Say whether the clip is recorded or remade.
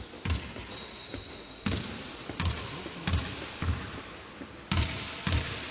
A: recorded